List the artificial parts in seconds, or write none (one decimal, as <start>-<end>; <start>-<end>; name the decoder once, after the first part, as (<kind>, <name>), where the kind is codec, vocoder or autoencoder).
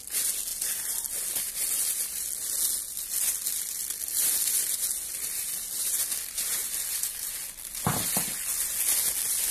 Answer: none